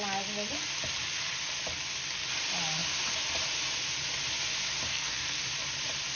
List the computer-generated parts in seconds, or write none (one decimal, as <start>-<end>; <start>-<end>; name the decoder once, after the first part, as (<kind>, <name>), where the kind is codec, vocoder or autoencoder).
4.9-5.4 (codec, SNAC)